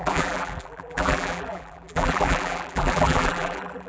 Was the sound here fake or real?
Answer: fake